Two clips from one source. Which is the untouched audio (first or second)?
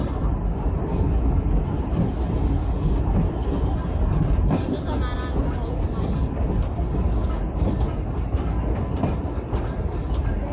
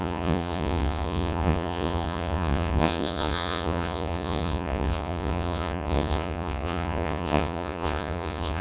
first